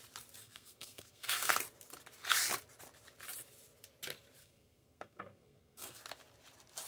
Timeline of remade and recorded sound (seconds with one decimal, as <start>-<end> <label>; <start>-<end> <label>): 0.0-0.4 recorded; 0.4-1.5 remade; 1.5-4.4 recorded; 4.4-6.0 remade; 6.0-6.9 recorded